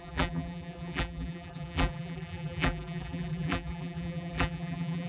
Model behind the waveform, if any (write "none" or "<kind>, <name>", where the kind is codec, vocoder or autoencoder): vocoder, BigVGAN v2